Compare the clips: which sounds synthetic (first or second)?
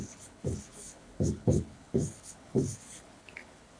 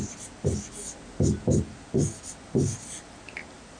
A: first